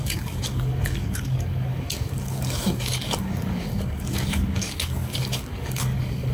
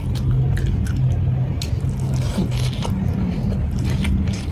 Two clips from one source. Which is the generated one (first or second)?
first